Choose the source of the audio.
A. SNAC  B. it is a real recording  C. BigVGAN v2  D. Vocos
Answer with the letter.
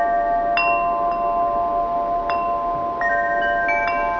B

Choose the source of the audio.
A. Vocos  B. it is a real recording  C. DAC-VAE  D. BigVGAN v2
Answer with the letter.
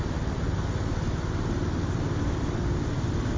B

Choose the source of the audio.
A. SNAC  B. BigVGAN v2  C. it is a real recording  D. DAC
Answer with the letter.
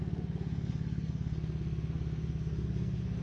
A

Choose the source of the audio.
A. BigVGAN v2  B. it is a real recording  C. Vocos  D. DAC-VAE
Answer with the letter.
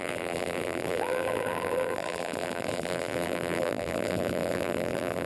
A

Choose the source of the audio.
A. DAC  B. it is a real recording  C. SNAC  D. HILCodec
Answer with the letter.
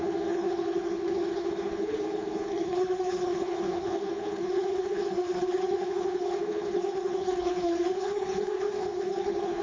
D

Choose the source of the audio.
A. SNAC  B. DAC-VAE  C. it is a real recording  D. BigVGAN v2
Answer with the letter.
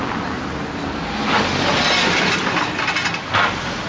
C